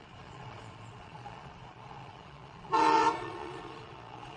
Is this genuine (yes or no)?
no